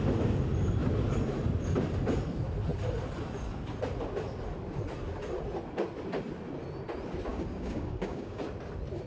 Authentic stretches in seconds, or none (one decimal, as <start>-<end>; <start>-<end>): 0.0-7.3; 8.4-9.1